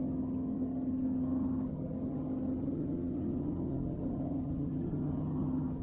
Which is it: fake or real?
fake